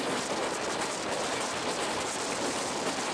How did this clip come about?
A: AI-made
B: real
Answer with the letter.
B